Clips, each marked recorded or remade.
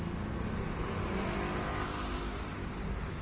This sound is recorded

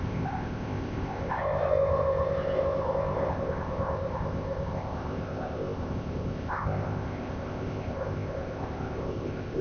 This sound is remade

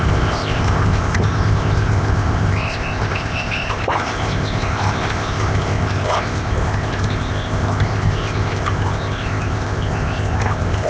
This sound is remade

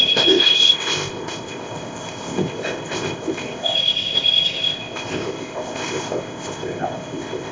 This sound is remade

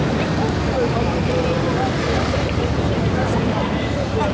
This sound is recorded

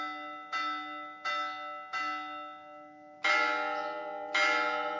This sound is recorded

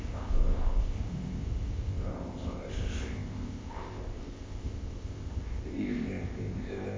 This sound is remade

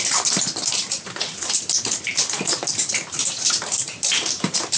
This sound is recorded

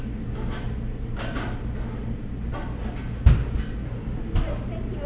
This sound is recorded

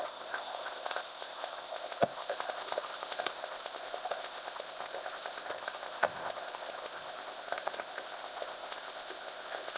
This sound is remade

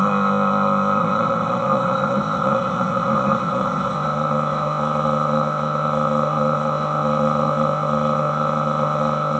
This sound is remade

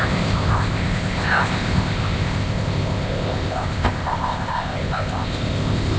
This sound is remade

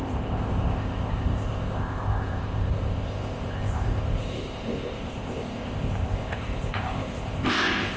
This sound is remade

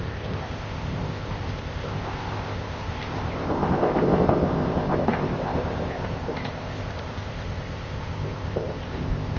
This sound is remade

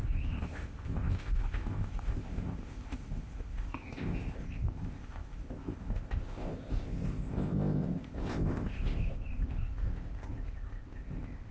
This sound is remade